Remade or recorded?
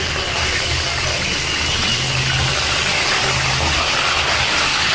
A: recorded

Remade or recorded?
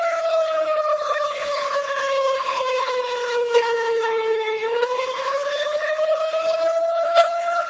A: remade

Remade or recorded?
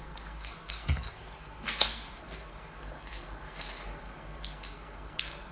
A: remade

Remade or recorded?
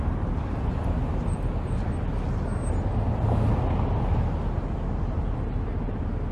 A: recorded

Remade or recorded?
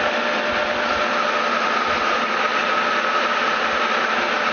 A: recorded